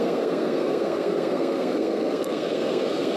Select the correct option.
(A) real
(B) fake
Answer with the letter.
B